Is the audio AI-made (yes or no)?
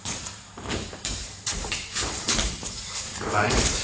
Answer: yes